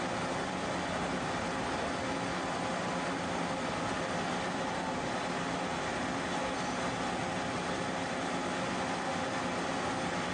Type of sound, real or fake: real